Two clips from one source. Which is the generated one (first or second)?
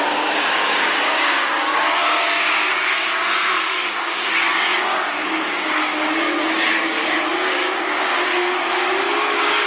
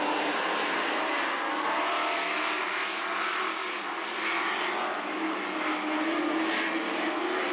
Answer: first